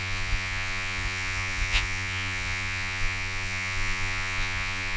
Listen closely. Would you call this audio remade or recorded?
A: remade